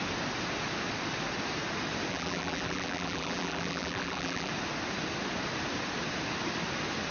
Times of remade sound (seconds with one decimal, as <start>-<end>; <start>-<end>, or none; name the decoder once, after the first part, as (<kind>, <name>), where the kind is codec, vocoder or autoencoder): 2.1-4.5 (vocoder, BigVGAN v2)